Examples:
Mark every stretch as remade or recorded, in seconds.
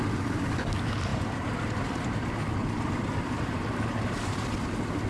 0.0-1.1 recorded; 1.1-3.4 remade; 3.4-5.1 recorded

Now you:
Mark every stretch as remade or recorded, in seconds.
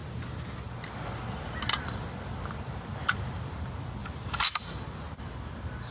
0.0-4.0 recorded; 4.0-4.5 remade; 4.5-5.9 recorded